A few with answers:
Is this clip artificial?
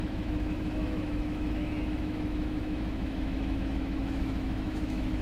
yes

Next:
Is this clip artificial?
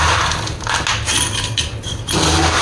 no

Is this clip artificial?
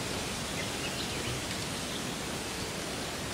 no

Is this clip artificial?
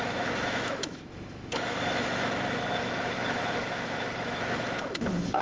yes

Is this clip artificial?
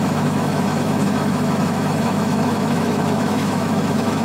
yes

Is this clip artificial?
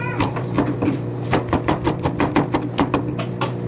no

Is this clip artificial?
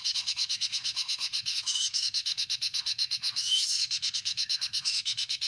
yes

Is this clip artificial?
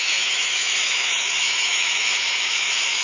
yes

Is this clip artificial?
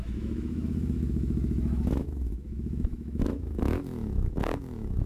yes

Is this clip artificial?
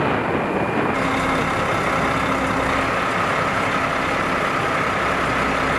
no